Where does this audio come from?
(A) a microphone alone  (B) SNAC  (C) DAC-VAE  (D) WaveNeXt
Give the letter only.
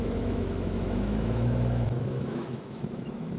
C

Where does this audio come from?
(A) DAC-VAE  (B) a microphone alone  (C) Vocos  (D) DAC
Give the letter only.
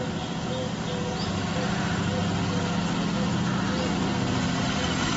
B